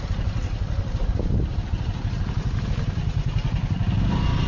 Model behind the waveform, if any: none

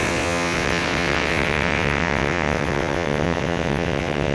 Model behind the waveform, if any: vocoder, WaveNeXt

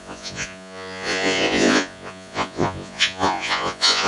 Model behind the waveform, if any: vocoder, Vocos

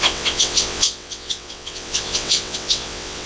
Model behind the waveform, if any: vocoder, WaveNeXt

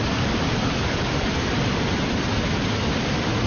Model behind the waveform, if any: none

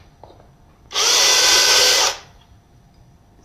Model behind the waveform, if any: none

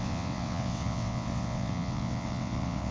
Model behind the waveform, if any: vocoder, WaveNeXt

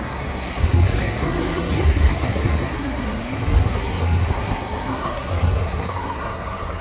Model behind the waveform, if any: codec, SNAC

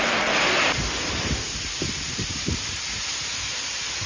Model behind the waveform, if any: none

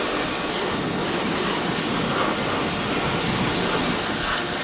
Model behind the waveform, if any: none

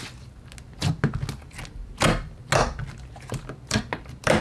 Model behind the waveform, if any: none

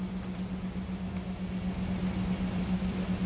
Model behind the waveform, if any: none